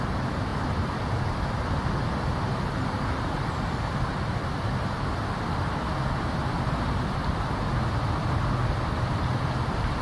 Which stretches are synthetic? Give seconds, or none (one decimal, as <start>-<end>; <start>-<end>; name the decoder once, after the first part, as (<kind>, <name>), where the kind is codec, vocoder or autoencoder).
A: none